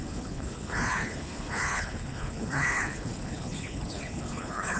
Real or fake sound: fake